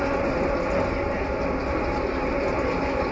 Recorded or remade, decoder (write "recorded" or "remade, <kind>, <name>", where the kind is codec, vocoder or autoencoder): recorded